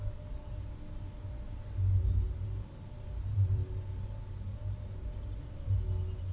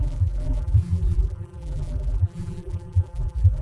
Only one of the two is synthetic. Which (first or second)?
second